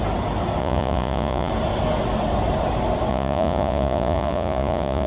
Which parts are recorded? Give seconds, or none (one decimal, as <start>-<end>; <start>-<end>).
0.0-0.6; 1.5-3.1